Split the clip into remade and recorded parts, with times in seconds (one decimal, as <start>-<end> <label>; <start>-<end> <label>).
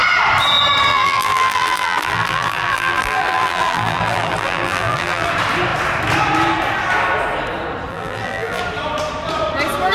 0.0-0.9 recorded; 0.9-5.3 remade; 5.3-7.9 recorded; 7.9-8.6 remade; 8.6-9.9 recorded